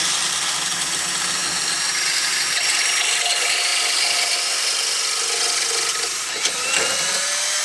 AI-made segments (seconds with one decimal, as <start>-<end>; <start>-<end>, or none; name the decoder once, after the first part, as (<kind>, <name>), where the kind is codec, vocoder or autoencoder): none